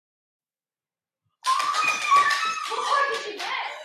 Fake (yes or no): yes